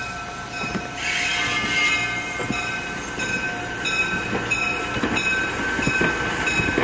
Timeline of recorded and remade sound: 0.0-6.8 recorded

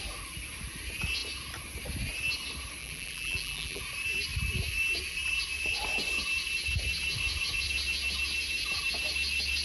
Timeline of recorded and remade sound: 0.0-2.8 recorded; 2.8-3.8 remade; 3.8-9.6 recorded

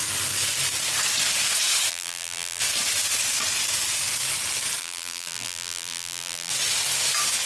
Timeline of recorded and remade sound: 0.0-1.9 recorded; 1.9-2.6 remade; 2.6-4.8 recorded; 4.8-6.5 remade; 6.5-7.5 recorded

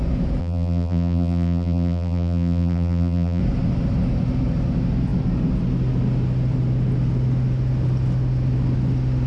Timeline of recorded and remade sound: 0.0-0.4 recorded; 0.4-3.4 remade; 3.4-9.3 recorded

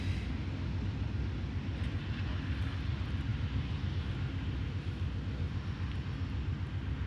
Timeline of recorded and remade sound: 0.0-3.3 recorded; 3.3-4.1 remade; 4.1-7.1 recorded